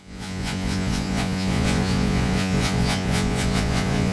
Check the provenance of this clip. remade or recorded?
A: remade